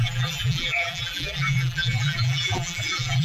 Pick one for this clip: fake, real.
fake